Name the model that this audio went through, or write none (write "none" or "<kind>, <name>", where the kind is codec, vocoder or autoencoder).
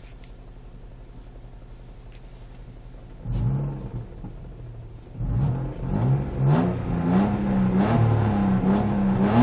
none